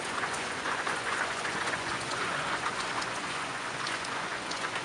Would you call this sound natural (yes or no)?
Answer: no